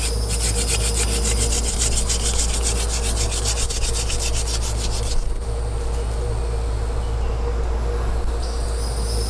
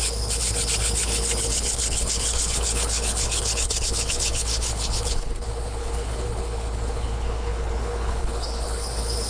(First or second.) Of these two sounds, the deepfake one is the second